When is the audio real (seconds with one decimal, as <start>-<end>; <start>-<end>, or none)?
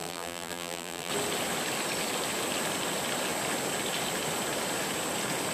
1.1-5.5